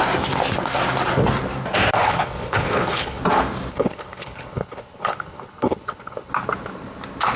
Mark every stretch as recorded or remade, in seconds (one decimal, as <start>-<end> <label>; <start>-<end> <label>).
0.0-2.0 recorded; 2.0-3.2 remade; 3.2-3.7 recorded; 3.7-6.3 remade; 6.3-7.4 recorded